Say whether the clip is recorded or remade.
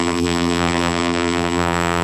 remade